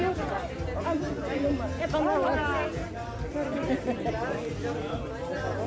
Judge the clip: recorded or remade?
recorded